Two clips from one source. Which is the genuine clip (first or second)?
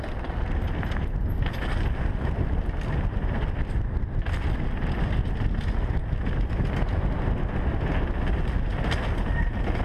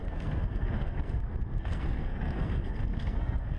first